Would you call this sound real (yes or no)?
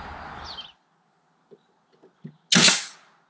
yes